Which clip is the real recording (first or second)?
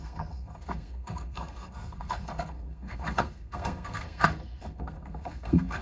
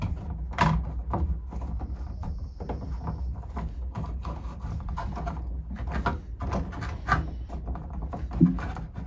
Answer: second